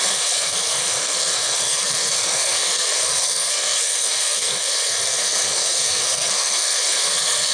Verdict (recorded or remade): remade